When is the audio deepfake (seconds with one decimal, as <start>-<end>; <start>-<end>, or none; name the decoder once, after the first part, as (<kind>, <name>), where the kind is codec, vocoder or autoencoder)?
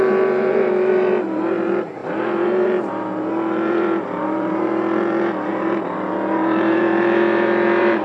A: 0.0-8.0 (vocoder, BigVGAN v2)